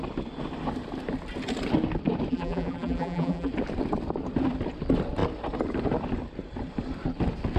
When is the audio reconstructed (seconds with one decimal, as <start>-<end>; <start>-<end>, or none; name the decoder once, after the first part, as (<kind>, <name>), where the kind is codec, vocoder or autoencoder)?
2.3-3.5 (vocoder, BigVGAN v2)